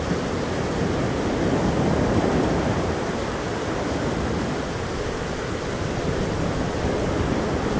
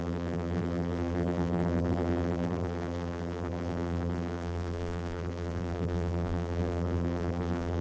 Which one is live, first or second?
first